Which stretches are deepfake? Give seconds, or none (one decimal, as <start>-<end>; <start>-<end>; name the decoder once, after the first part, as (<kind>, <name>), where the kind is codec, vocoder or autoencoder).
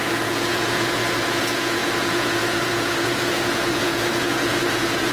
0.0-5.1 (vocoder, Vocos)